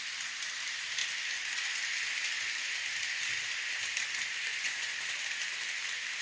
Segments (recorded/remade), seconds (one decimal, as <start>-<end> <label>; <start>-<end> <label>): 0.0-4.5 recorded; 4.5-5.1 remade; 5.1-6.2 recorded

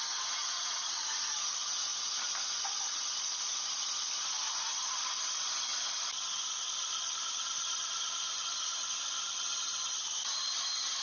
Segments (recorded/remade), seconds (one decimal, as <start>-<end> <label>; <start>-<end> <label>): 0.0-0.4 recorded; 0.4-1.2 remade; 1.2-11.0 recorded